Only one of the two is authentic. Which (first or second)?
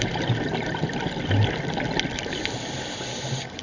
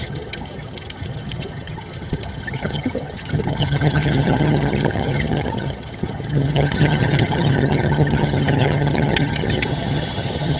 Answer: first